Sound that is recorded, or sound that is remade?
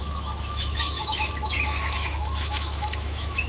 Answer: remade